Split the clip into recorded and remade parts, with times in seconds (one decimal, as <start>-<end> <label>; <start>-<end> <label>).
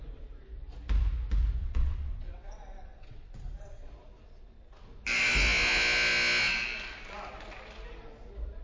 0.0-1.6 recorded; 1.6-3.9 remade; 3.9-8.6 recorded